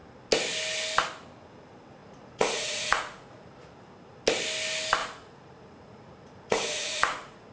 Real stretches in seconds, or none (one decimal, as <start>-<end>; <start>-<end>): 0.0-2.0; 3.7-5.0